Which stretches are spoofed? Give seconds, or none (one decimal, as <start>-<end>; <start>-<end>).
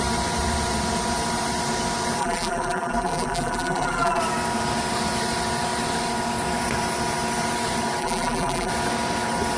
2.2-4.2; 8.0-8.7